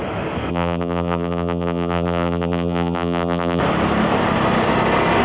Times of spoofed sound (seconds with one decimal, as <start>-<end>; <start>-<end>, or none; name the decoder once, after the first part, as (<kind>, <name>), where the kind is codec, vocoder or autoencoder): 0.5-3.6 (vocoder, BigVGAN v2)

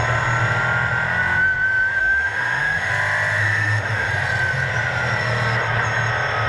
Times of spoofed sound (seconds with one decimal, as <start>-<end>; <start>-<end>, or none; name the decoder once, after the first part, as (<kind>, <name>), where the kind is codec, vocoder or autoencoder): 2.0-2.9 (autoencoder, DAC-VAE); 3.4-4.1